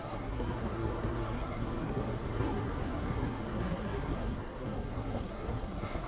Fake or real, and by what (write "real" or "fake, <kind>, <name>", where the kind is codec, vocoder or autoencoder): fake, codec, SNAC